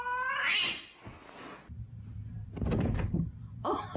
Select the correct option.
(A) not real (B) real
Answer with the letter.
B